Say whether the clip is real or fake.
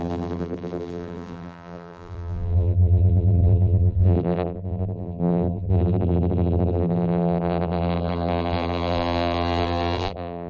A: fake